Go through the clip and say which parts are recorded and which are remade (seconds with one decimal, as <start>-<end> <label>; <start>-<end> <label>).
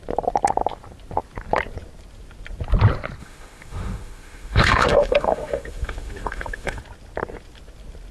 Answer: 0.0-3.2 recorded; 3.2-6.8 remade; 6.8-8.1 recorded